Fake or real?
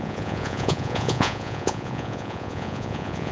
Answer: fake